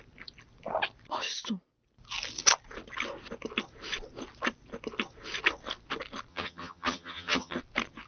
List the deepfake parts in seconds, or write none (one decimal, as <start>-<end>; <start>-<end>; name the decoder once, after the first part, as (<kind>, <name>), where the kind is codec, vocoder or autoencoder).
6.3-7.6 (vocoder, HiFi-GAN)